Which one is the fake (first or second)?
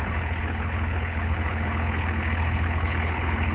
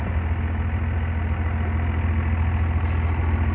first